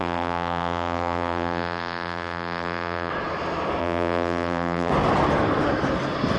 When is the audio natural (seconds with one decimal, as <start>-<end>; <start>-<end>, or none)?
3.1-3.8; 4.9-6.4